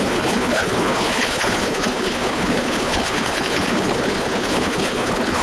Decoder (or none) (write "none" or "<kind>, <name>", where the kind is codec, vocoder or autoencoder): codec, HILCodec